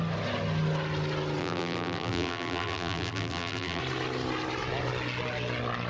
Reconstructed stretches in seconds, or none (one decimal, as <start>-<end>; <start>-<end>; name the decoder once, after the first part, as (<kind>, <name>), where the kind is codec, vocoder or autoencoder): 1.4-3.8 (vocoder, BigVGAN v2)